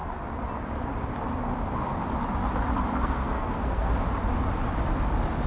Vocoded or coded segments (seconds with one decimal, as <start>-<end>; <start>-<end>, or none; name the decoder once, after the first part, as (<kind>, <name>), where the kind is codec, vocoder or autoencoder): 2.9-3.9 (codec, SNAC)